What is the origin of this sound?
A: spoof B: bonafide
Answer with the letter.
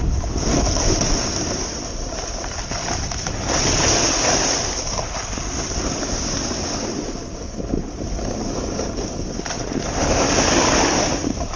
B